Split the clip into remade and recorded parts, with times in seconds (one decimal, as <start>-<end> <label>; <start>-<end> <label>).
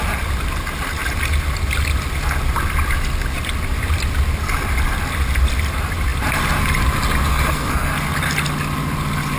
0.0-7.3 recorded; 7.3-7.9 remade; 7.9-9.4 recorded